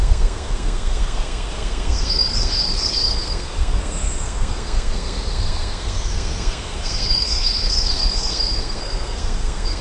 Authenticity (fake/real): fake